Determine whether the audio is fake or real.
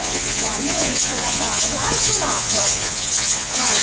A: fake